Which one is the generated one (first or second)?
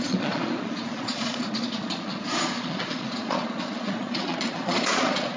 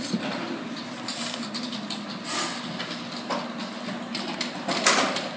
first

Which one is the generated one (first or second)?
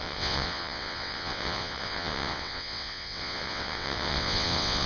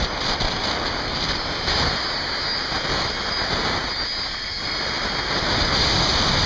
first